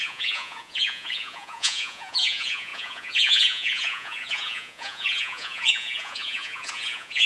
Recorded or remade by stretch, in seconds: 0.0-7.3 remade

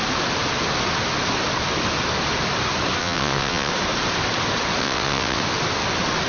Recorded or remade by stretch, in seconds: 0.0-3.0 recorded; 3.0-3.7 remade; 3.7-4.8 recorded; 4.8-5.4 remade; 5.4-6.3 recorded

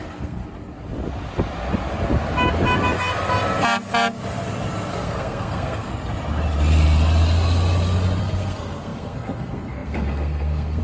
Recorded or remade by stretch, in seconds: 0.0-0.4 remade; 0.4-4.9 recorded; 4.9-5.9 remade; 5.9-8.2 recorded; 8.2-10.8 remade

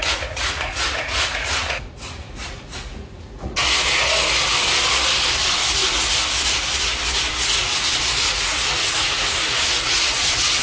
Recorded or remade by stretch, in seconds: 0.0-3.6 remade; 3.6-8.3 recorded; 8.3-10.6 remade